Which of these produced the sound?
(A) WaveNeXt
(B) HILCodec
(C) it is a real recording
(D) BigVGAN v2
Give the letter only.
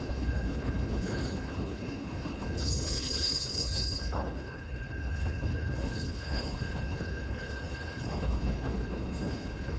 B